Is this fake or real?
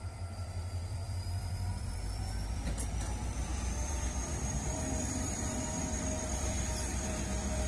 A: fake